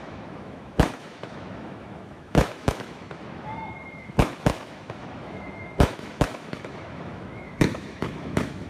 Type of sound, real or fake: fake